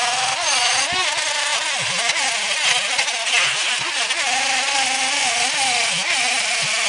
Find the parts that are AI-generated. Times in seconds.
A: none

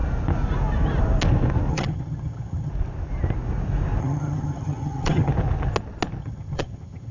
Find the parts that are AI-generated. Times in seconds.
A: 1.7-2.7 (vocoder, HiFi-GAN); 4.0-5.3; 6.2-7.1

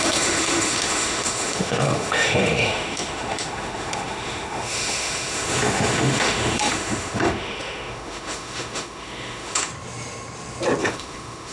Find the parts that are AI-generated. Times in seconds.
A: 0.0-9.7 (autoencoder, DAC-VAE); 10.8-11.5

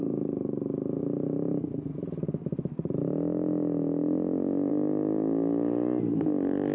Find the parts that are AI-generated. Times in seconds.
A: none

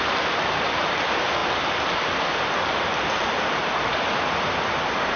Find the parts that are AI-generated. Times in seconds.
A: none

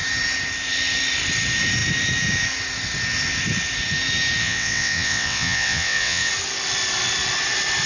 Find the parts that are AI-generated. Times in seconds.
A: 4.4-6.3 (vocoder, WaveNeXt)

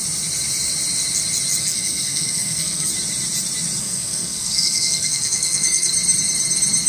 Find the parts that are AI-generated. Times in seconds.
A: 1.6-2.9 (codec, SNAC); 3.8-5.9